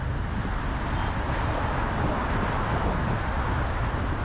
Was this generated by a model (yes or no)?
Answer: no